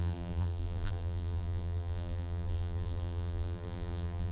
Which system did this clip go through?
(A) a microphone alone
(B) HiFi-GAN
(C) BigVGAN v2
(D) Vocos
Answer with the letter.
C